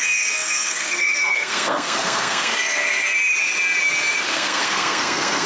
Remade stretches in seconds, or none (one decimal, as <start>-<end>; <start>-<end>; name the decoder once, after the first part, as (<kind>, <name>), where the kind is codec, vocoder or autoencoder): 0.0-2.5 (codec, SNAC); 4.3-5.5